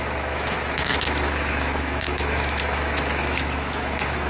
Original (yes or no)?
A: no